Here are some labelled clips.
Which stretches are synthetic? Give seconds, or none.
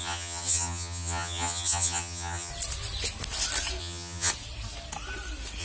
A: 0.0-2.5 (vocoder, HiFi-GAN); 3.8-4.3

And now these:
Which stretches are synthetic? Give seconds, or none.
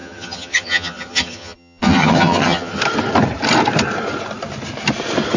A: 0.0-2.8 (vocoder, HiFi-GAN)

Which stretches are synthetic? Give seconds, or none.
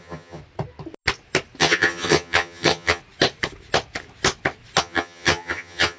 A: 0.0-0.4 (vocoder, HiFi-GAN); 1.6-3.0; 4.8-6.0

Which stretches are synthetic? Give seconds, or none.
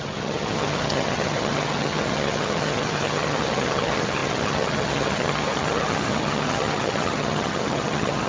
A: 0.0-8.3 (vocoder, HiFi-GAN)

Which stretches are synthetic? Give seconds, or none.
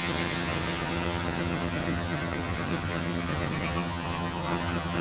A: 0.0-5.0 (vocoder, HiFi-GAN)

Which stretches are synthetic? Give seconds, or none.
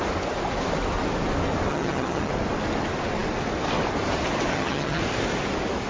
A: 1.7-2.3 (vocoder, HiFi-GAN); 4.5-5.0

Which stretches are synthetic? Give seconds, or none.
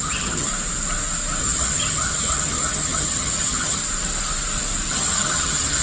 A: 0.0-0.5 (vocoder, HiFi-GAN); 1.4-3.8; 4.9-5.8